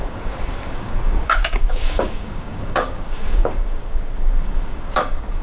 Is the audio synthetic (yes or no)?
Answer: yes